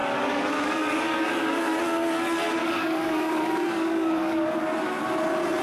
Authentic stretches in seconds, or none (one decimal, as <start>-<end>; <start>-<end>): 1.8-2.6; 4.6-5.6